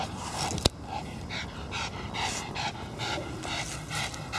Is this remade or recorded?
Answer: recorded